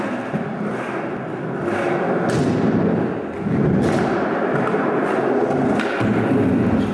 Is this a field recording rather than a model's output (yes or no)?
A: yes